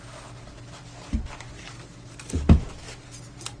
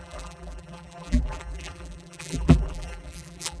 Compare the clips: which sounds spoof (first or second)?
second